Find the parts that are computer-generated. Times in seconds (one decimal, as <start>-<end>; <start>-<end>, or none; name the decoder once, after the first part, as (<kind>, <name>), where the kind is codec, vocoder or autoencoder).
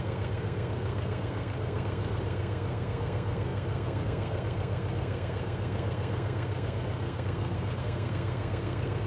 0.0-9.1 (codec, SNAC)